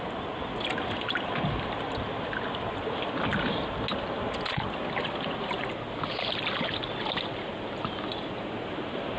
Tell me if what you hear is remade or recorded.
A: recorded